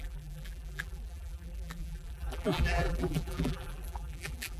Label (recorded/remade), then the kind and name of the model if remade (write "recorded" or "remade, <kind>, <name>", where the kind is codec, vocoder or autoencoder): remade, vocoder, BigVGAN v2